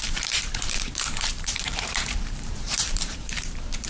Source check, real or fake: fake